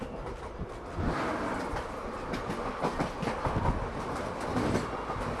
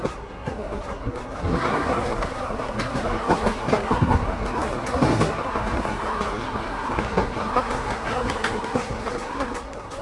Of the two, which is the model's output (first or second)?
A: second